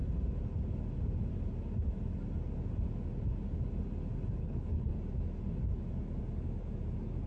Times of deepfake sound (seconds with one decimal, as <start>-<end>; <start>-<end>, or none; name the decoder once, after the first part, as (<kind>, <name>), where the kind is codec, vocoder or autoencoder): 4.4-4.9 (codec, HILCodec)